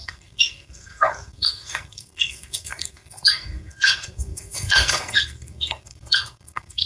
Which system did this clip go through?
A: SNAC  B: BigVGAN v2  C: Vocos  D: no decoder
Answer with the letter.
A